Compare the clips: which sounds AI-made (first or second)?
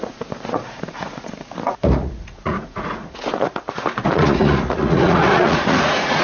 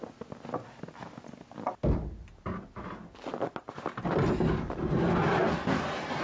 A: first